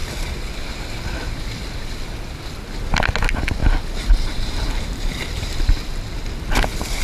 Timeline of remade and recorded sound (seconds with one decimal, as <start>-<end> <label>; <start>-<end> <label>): 0.0-3.6 recorded; 3.6-5.7 remade; 5.7-7.0 recorded